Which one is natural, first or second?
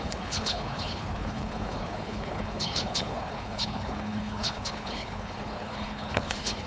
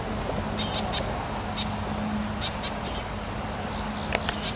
second